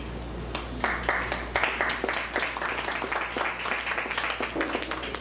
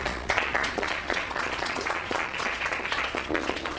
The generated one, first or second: second